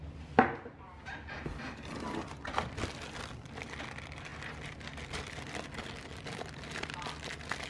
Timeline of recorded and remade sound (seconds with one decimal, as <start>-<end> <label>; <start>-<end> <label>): 0.0-7.7 recorded